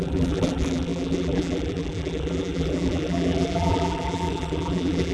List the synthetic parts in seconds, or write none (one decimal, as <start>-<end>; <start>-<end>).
0.0-5.1